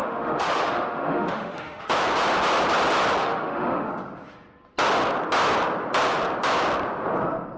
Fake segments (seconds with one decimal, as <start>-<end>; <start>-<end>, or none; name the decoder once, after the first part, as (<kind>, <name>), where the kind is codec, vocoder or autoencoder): 0.0-1.8 (autoencoder, DAC-VAE); 3.2-3.9